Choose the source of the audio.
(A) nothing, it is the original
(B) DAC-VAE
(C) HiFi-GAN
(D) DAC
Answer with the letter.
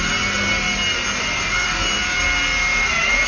A